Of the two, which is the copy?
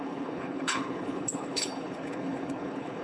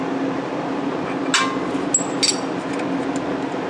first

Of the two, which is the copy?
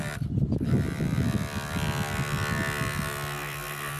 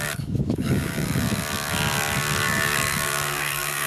second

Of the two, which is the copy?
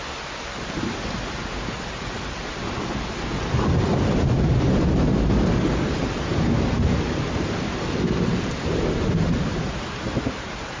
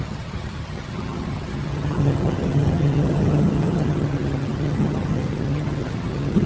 second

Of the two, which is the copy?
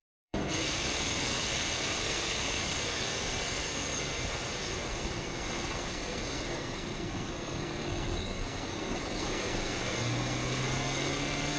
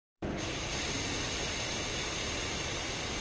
first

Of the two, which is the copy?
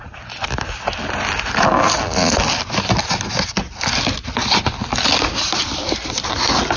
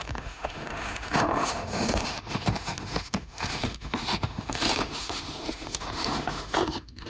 second